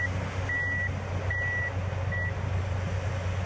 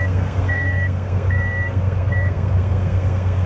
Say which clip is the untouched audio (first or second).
first